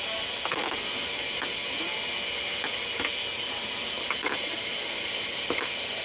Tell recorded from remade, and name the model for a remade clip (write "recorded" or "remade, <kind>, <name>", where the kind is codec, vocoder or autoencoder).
recorded